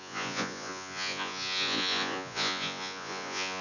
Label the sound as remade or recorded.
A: remade